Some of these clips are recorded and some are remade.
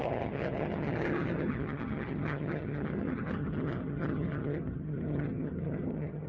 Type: remade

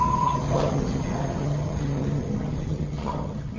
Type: remade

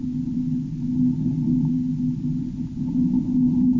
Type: recorded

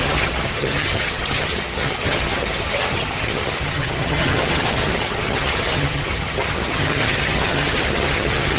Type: remade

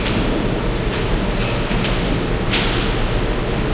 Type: recorded